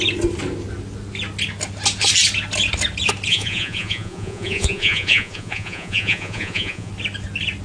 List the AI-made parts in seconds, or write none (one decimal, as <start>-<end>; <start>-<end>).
3.3-6.9